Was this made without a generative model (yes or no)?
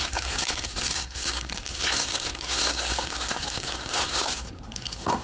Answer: no